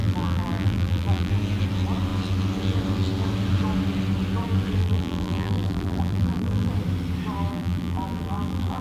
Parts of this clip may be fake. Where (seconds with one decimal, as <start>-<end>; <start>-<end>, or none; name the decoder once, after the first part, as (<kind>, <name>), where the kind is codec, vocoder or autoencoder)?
0.0-1.3 (vocoder, BigVGAN v2); 4.8-6.7; 7.5-8.8

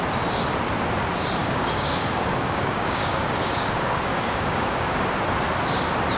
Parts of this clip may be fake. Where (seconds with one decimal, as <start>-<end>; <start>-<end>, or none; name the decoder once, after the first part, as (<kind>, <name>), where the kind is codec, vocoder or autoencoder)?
1.4-5.1 (codec, DAC)

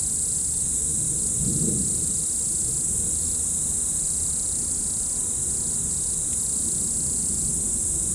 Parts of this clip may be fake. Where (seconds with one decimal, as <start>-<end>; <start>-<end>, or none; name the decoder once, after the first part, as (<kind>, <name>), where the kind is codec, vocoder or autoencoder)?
none

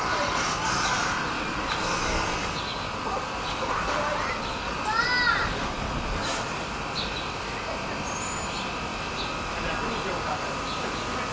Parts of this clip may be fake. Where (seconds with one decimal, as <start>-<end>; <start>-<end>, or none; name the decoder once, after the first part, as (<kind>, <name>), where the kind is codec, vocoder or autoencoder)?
none

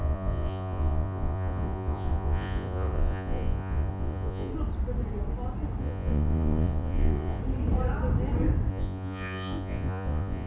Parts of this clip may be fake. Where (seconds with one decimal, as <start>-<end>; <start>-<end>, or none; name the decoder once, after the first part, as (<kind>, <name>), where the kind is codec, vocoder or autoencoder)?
0.0-4.5 (vocoder, Vocos); 5.8-7.4; 8.7-10.5

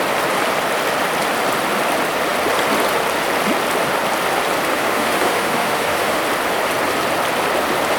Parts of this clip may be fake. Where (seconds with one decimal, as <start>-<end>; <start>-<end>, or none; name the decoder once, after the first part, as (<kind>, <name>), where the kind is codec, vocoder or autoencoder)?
4.7-6.2 (autoencoder, DAC-VAE)

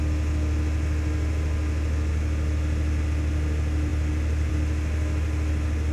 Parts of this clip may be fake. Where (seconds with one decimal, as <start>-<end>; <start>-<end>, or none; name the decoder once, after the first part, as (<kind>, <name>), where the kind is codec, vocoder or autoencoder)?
none